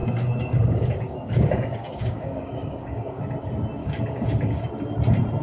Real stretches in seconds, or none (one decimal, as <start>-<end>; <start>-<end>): 3.2-3.8; 4.7-5.4